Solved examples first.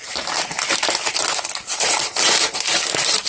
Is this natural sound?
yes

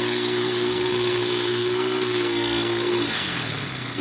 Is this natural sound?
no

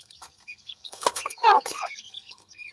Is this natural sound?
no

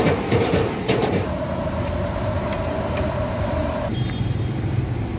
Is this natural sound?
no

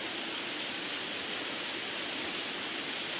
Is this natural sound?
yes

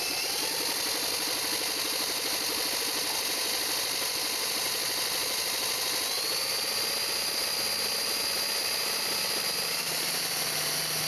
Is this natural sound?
yes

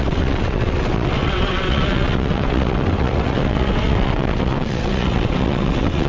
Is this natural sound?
no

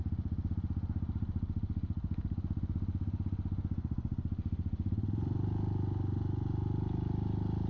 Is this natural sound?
yes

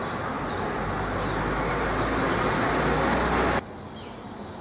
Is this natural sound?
yes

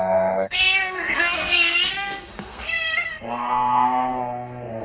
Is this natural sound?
no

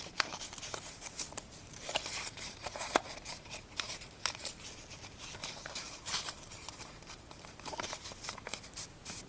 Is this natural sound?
no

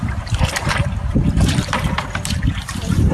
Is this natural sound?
no